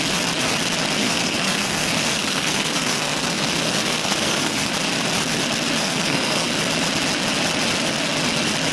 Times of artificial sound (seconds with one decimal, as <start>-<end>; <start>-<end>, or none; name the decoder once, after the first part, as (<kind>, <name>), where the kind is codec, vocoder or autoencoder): 1.0-4.7 (codec, SNAC); 5.8-6.5